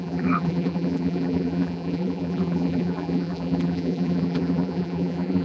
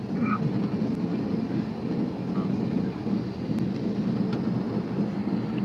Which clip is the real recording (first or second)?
second